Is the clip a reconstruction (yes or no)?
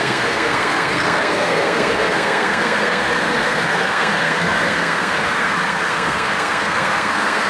yes